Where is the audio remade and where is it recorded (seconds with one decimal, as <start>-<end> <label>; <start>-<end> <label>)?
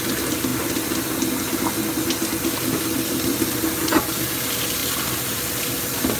0.0-6.2 recorded